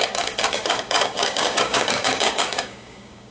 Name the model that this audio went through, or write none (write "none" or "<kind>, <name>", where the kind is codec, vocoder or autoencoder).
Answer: codec, DAC